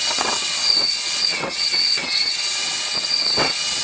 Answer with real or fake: fake